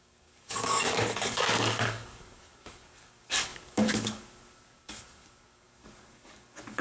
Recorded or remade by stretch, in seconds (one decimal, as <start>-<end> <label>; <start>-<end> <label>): 0.0-6.8 remade